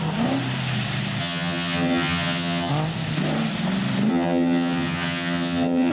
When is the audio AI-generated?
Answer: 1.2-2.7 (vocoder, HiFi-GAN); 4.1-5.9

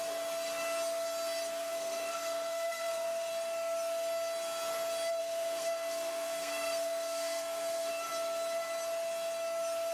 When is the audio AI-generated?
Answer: 1.6-3.3 (codec, SNAC); 5.2-7.9

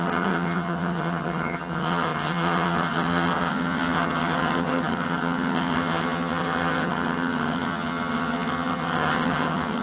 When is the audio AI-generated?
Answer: 0.0-9.8 (vocoder, HiFi-GAN)

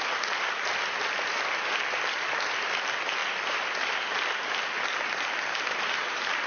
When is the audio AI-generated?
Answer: none

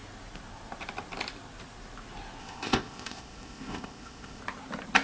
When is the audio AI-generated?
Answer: 2.4-4.4 (codec, ZipCodec)

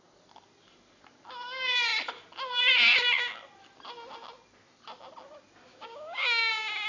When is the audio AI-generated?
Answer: 5.7-6.5 (codec, DAC)

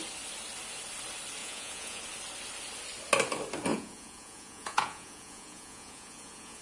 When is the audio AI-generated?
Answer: 1.4-2.0 (vocoder, Vocos); 3.7-6.6